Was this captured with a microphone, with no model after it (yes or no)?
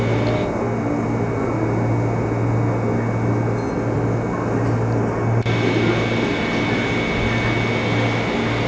yes